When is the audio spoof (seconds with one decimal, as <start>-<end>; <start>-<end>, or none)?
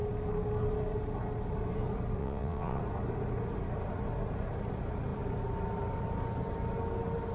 2.2-2.8